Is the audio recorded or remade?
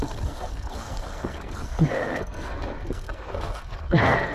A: remade